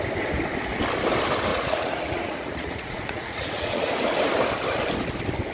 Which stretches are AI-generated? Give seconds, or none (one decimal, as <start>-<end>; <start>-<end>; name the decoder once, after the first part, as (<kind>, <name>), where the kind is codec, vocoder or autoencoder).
1.5-3.9 (vocoder, Vocos)